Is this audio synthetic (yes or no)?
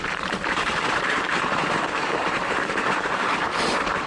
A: yes